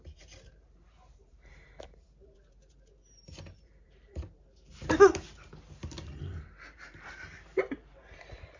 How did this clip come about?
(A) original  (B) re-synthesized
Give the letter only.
B